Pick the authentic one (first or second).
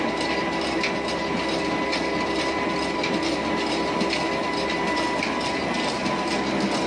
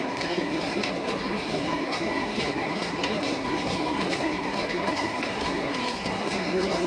first